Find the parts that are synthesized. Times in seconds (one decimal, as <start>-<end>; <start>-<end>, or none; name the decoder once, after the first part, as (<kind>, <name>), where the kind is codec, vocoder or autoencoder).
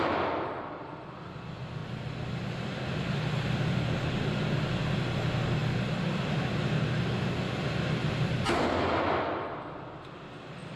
none